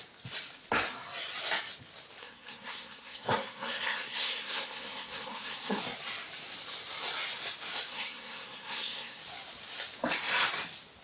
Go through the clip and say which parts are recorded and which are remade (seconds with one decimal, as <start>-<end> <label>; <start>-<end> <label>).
0.0-2.2 recorded; 2.2-5.8 remade; 5.8-7.9 recorded; 7.9-9.2 remade; 9.2-11.0 recorded